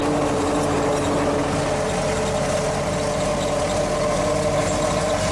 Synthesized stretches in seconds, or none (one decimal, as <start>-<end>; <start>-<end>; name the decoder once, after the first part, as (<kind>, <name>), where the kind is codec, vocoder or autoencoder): none